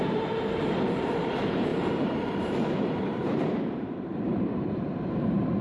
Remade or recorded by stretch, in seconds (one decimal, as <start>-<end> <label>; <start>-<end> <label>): 0.0-5.6 remade